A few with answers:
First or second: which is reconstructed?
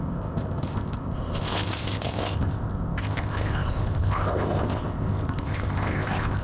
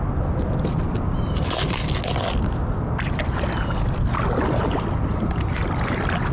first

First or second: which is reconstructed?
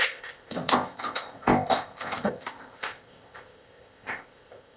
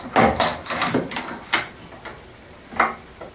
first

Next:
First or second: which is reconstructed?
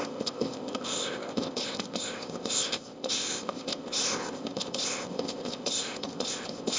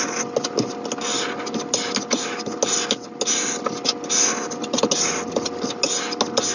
first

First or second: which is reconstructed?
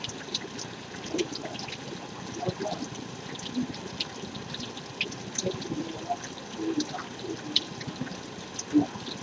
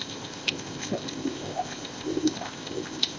second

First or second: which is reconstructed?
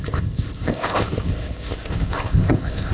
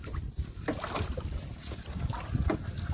first